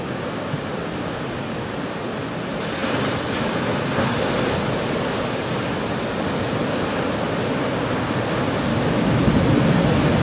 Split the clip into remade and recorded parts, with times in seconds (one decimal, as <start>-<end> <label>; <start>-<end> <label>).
0.0-8.7 recorded; 8.7-9.3 remade; 9.3-10.2 recorded